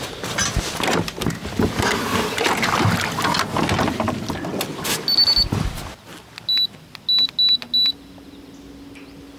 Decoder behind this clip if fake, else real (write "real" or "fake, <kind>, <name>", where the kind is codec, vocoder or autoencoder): real